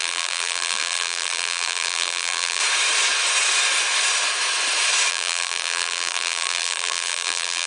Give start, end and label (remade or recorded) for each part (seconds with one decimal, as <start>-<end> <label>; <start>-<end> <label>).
0.0-2.6 remade; 2.6-5.1 recorded; 5.1-7.7 remade